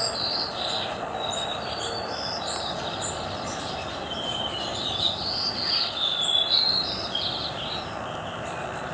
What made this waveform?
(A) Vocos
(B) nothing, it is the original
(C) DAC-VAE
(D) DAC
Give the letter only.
B